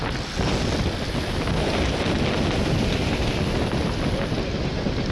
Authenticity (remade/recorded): recorded